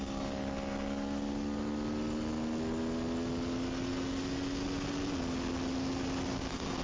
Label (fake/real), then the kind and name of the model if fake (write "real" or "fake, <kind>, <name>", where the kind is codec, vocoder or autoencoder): real